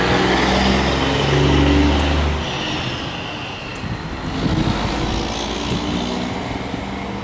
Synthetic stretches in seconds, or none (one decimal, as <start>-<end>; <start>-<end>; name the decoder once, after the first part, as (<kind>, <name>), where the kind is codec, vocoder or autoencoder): none